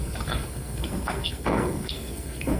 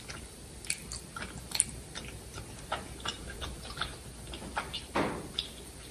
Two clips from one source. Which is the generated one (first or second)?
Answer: first